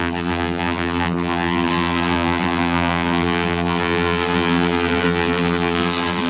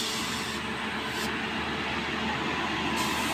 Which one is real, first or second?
second